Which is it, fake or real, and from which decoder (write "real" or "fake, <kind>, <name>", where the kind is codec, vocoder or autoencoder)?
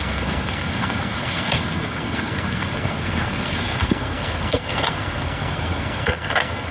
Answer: fake, codec, SNAC